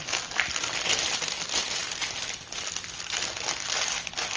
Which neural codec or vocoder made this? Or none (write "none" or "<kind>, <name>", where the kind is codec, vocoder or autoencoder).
none